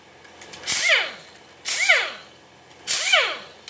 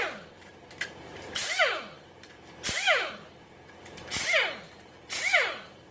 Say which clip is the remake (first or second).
second